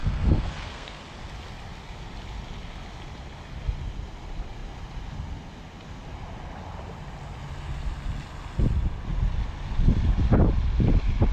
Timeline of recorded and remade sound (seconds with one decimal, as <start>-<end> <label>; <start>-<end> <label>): 0.0-1.0 remade; 1.0-11.3 recorded